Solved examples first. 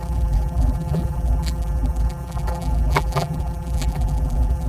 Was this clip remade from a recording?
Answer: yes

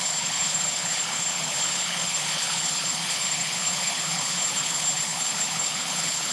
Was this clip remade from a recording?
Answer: yes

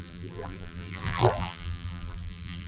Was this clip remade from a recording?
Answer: yes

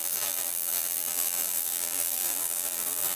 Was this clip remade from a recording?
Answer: yes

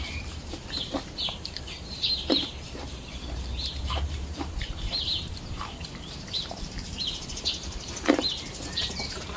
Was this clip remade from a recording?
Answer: yes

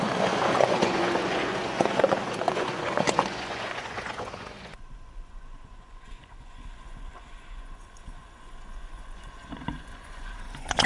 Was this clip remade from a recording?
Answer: yes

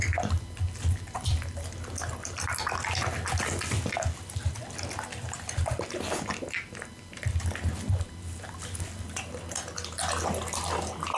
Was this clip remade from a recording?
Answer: no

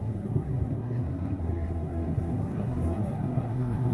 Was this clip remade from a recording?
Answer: yes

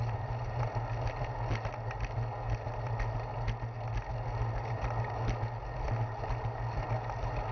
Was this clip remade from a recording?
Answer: no